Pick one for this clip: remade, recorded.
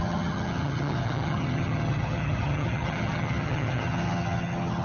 remade